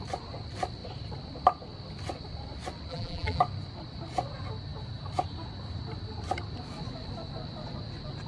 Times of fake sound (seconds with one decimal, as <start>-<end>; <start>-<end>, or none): 2.9-3.4